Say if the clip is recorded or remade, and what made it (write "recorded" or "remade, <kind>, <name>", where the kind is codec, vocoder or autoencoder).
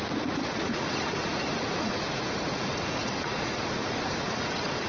remade, vocoder, Vocos